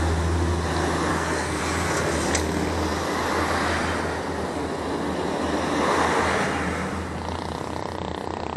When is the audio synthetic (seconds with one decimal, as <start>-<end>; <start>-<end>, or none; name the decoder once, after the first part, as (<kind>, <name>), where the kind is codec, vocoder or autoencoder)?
1.1-1.6 (codec, SNAC)